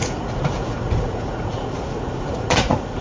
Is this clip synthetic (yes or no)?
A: yes